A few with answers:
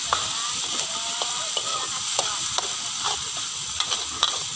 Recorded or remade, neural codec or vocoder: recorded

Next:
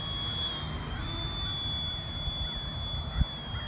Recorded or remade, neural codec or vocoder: recorded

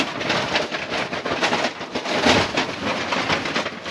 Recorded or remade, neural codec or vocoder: recorded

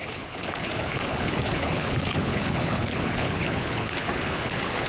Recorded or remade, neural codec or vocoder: remade, codec, HILCodec